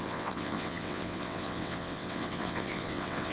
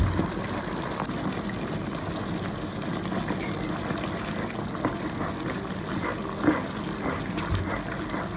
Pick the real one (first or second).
second